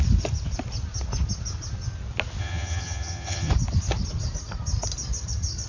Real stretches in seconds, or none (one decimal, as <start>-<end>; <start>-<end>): 0.0-2.4; 3.5-5.7